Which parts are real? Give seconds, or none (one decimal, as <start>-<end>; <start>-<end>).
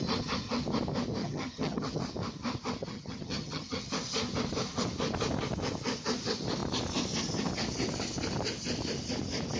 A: 0.0-1.2; 2.0-2.8; 3.9-9.6